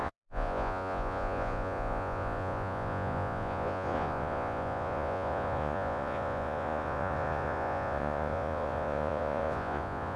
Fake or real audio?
fake